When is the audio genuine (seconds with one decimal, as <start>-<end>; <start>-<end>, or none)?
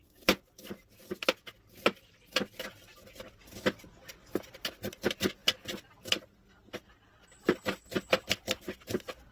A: 0.0-9.3